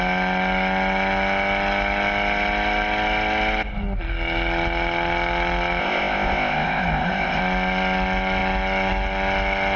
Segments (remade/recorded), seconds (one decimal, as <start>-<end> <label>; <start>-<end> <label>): 0.0-5.8 recorded; 5.8-7.4 remade; 7.4-9.8 recorded